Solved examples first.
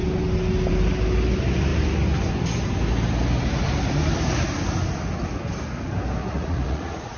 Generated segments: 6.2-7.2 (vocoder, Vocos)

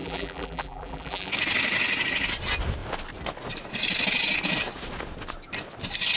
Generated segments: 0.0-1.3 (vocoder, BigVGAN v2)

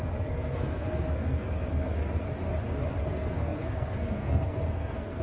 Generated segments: 0.0-2.3 (codec, SNAC); 3.0-5.2

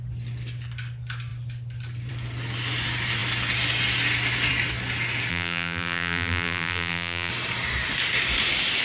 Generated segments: 5.3-7.3 (vocoder, BigVGAN v2)

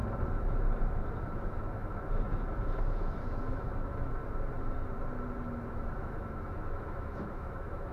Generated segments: 0.8-4.2 (autoencoder, DAC-VAE); 5.7-7.9

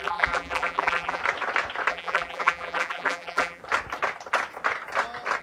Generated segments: 0.0-1.2 (vocoder, BigVGAN v2); 1.9-3.6